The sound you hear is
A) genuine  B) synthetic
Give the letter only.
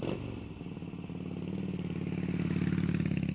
A